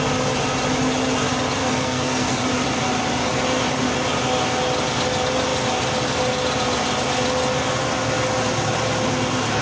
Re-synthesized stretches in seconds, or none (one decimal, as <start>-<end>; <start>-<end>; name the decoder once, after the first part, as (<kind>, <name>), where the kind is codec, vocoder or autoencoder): 1.6-2.4 (codec, SNAC)